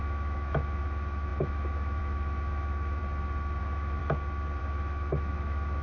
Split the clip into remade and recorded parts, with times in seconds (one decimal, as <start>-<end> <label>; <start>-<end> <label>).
0.0-3.0 remade; 3.0-3.6 recorded; 3.6-4.0 remade; 4.0-4.6 recorded; 4.6-5.8 remade